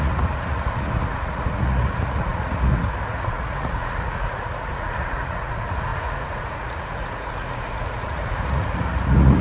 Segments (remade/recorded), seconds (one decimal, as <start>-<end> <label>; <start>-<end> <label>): 0.0-9.4 remade